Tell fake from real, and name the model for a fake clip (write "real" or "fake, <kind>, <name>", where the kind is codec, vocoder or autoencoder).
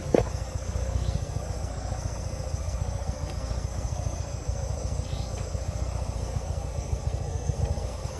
fake, codec, SNAC